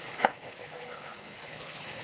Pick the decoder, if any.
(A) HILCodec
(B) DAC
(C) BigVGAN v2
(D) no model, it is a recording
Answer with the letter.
A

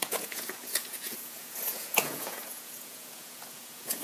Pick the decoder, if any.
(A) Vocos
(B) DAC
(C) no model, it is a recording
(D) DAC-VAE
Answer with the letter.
A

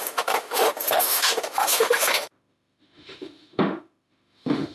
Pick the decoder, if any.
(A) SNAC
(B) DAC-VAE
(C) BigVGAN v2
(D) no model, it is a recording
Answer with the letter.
B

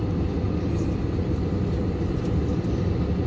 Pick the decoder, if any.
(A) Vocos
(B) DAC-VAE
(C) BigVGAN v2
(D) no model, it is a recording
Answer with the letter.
D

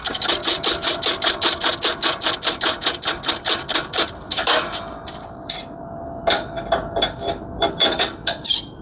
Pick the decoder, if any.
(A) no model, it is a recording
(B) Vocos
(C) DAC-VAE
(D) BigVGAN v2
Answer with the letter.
A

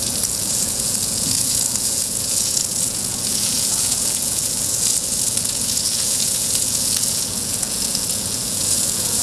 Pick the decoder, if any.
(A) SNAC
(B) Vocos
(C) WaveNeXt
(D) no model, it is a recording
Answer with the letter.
B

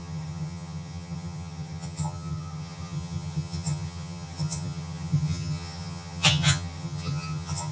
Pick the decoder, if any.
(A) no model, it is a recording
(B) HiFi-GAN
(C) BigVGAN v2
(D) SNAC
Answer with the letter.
B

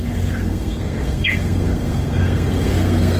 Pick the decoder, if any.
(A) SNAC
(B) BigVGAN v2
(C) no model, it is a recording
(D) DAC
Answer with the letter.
A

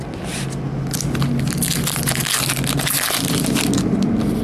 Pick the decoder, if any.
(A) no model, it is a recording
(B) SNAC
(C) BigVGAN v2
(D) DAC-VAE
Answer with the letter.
A